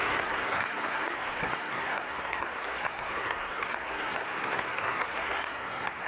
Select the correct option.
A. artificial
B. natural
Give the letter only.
A